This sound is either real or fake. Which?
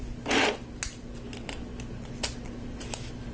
real